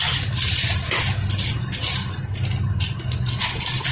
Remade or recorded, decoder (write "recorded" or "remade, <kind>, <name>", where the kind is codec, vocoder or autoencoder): recorded